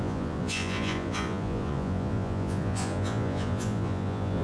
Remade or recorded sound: remade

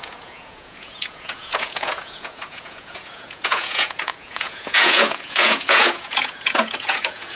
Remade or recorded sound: remade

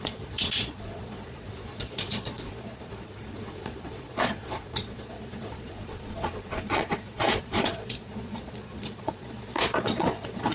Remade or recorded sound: remade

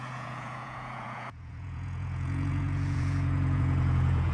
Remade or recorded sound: remade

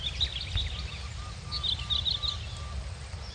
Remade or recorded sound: recorded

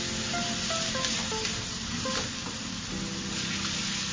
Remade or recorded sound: recorded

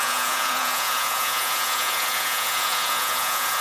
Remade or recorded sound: remade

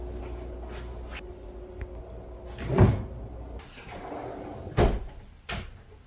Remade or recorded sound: recorded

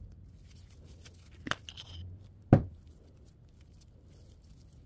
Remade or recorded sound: recorded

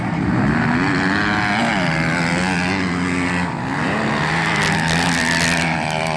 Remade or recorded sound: recorded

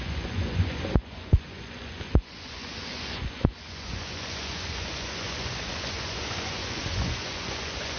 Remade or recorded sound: remade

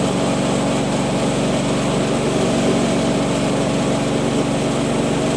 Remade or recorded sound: recorded